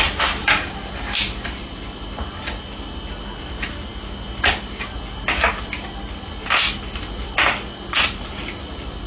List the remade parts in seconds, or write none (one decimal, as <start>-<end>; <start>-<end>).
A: none